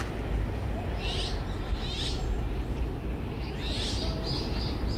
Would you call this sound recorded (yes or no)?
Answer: yes